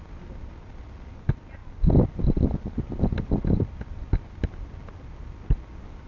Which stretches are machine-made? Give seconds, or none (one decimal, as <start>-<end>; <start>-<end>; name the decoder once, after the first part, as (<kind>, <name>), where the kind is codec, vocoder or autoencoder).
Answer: 1.6-2.6 (vocoder, BigVGAN v2)